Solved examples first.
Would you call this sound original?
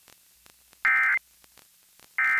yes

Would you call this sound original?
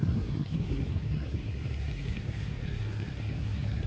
no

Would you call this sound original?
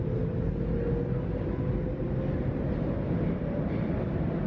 yes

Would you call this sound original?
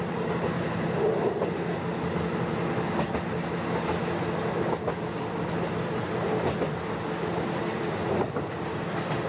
yes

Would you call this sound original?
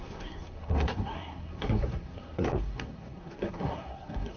no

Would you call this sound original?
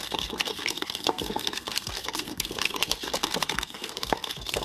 no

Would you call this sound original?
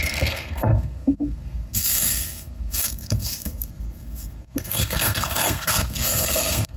no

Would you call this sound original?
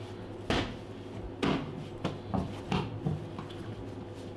yes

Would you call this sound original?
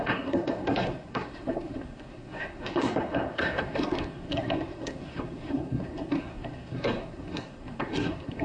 no